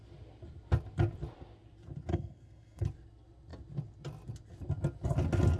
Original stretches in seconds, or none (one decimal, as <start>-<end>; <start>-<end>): 0.0-2.1; 2.8-5.6